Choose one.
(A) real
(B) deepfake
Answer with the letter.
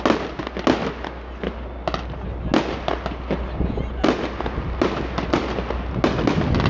A